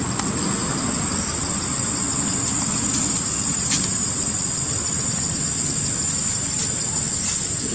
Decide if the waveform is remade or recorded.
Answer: recorded